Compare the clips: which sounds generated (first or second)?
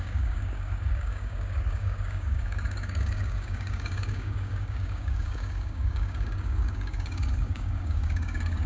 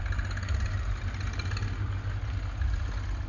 first